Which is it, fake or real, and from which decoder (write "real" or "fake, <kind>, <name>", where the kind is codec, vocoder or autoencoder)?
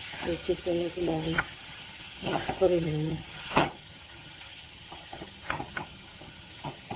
fake, vocoder, HiFi-GAN